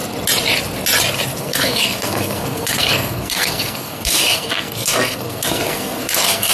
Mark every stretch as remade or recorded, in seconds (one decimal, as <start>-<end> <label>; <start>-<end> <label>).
0.0-1.4 recorded; 1.4-6.5 remade

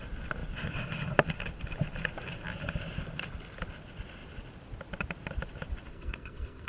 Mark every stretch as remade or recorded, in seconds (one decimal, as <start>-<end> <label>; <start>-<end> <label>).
0.0-5.9 recorded; 5.9-6.7 remade

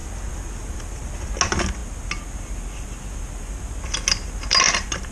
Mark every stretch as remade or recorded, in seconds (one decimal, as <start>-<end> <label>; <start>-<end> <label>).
0.0-5.1 recorded

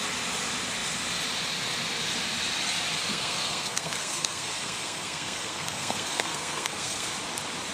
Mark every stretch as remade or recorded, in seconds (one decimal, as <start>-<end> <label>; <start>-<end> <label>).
0.0-3.1 recorded; 3.1-7.1 remade; 7.1-7.7 recorded

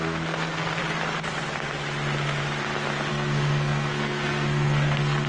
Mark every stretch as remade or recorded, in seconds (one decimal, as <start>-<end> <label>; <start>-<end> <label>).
0.0-0.8 remade; 0.8-3.1 recorded; 3.1-5.3 remade

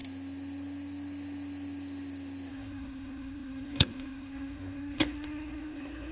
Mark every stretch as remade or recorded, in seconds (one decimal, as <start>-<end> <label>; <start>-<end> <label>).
0.0-2.5 recorded; 2.5-6.1 remade